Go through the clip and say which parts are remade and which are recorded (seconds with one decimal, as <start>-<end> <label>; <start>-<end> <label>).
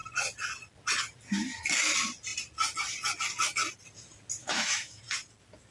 0.0-4.4 recorded; 4.4-5.0 remade; 5.0-5.7 recorded